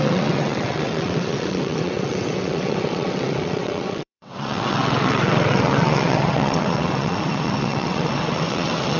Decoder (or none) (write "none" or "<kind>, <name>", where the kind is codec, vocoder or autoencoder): vocoder, WaveNeXt